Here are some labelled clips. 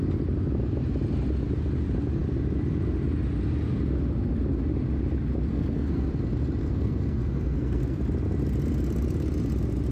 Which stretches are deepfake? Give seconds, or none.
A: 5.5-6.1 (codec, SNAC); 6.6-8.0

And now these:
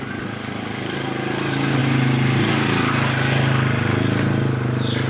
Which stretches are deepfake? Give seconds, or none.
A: none

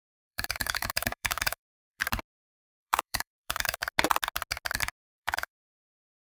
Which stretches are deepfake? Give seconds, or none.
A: 0.0-2.0 (autoencoder, DAC-VAE); 2.6-3.8; 5.0-6.4